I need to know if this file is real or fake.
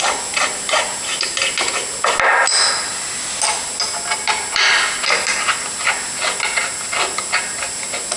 real